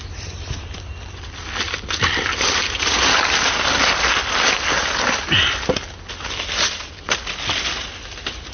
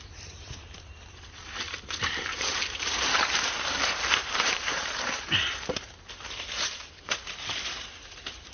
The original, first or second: first